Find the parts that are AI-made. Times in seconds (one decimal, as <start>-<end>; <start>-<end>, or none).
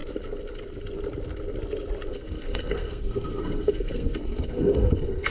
2.1-5.3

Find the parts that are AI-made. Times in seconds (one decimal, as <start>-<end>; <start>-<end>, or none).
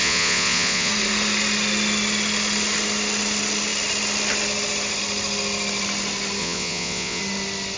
0.0-0.9; 6.4-7.2